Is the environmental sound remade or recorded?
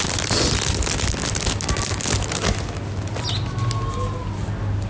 recorded